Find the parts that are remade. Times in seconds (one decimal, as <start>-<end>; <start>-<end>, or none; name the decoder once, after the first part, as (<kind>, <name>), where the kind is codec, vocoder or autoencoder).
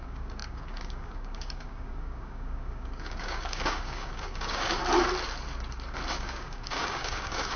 0.0-4.8 (codec, DAC); 6.1-7.6